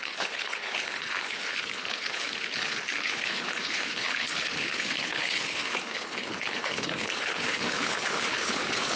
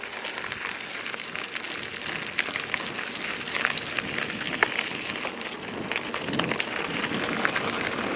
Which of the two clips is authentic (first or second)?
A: second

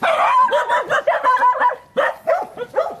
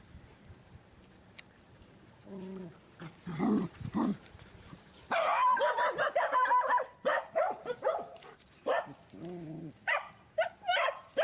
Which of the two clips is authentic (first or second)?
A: first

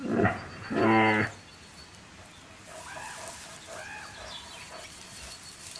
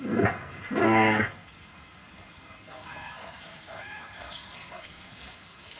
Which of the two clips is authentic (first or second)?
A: first